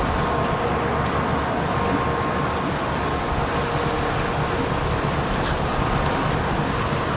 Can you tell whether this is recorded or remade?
recorded